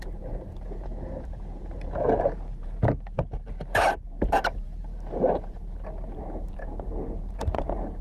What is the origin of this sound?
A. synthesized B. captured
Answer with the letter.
A